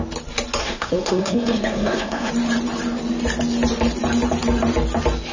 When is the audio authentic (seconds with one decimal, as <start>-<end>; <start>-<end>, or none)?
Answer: 0.0-0.6; 2.3-5.3